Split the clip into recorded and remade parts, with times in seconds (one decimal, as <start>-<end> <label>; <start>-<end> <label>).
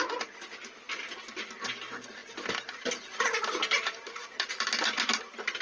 0.0-5.6 recorded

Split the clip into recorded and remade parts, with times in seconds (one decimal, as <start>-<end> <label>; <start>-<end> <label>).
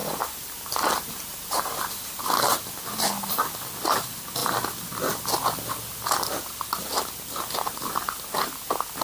0.0-2.3 remade; 2.3-9.0 recorded